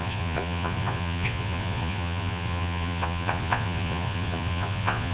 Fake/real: fake